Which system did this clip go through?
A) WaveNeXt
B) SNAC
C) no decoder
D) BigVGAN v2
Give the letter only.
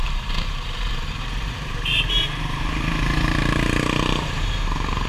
D